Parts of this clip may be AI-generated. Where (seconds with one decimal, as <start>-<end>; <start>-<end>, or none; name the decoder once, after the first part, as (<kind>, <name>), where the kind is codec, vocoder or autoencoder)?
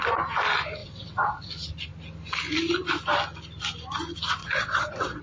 0.8-1.5 (vocoder, WaveNeXt); 4.4-5.2